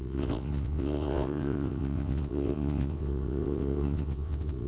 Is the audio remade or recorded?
remade